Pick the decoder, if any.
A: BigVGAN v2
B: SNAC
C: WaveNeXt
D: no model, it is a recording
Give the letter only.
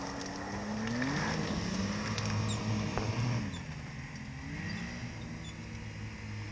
D